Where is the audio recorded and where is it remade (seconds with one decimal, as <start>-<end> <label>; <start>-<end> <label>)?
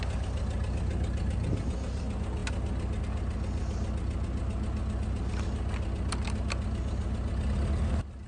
0.0-8.3 recorded